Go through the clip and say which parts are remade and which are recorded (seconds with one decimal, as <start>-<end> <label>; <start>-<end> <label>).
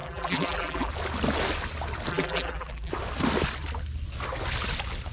0.0-0.9 remade; 0.9-2.1 recorded; 2.1-2.9 remade; 2.9-5.1 recorded